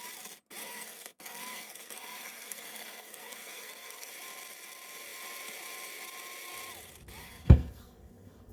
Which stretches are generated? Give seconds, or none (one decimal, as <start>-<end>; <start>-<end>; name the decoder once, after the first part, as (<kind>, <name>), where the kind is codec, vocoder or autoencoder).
0.6-4.1 (codec, SNAC); 7.2-8.5